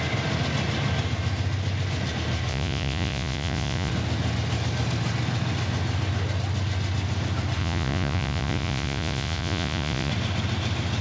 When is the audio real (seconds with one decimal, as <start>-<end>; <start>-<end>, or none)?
0.0-2.5; 3.9-7.6; 10.1-11.0